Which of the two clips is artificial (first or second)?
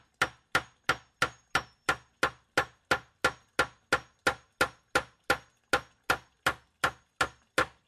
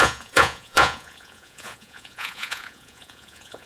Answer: second